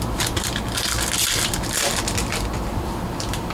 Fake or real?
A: real